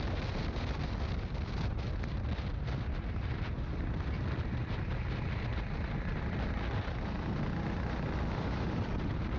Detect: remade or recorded recorded